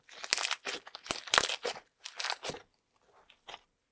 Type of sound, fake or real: real